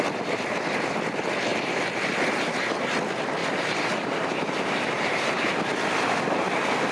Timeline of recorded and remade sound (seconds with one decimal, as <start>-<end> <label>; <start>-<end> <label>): 0.0-1.5 recorded; 1.5-2.9 remade; 2.9-3.4 recorded; 3.4-5.6 remade; 5.6-6.9 recorded